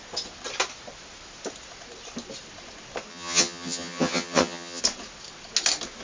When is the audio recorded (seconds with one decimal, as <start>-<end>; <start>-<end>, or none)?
0.0-3.1; 4.8-6.0